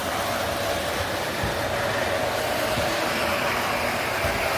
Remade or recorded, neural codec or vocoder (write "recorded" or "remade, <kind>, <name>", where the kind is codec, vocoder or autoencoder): recorded